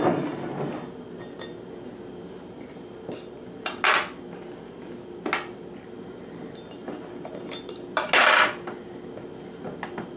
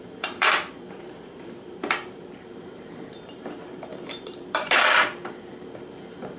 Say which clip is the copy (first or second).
second